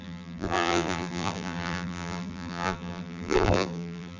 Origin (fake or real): fake